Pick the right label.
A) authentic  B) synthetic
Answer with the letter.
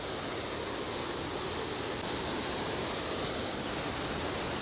A